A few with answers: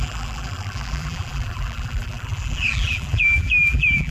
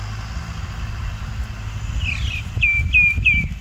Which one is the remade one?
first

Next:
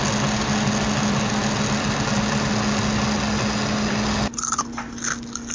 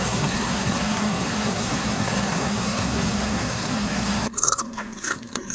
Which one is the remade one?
second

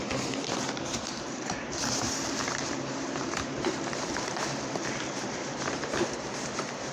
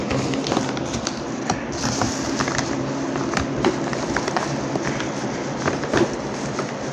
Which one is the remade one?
first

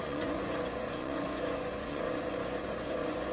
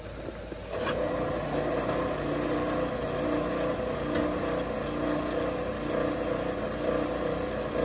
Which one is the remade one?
first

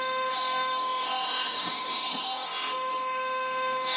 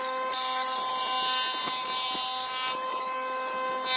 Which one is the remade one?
first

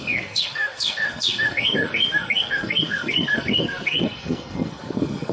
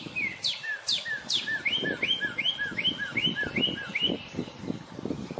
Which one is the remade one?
first